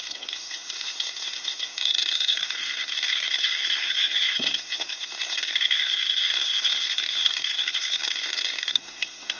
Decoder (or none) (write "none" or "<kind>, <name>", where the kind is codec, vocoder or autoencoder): codec, SNAC